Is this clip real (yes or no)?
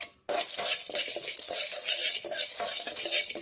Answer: yes